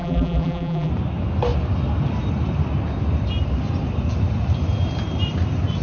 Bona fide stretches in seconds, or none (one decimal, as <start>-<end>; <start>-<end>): 0.9-5.8